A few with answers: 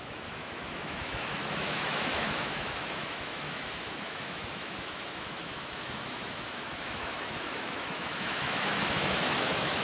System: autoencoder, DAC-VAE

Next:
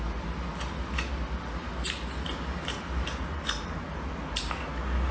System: none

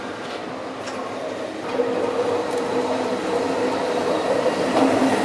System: none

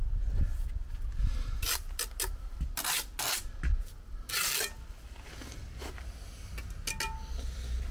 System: none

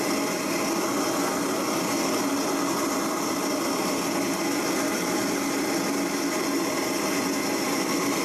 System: none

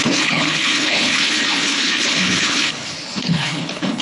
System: codec, HILCodec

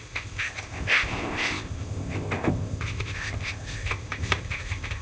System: codec, ZipCodec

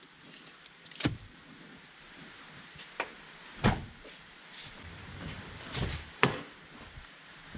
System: vocoder, BigVGAN v2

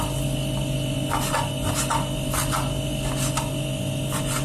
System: none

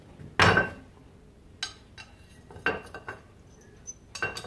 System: none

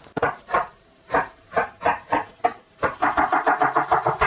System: vocoder, BigVGAN v2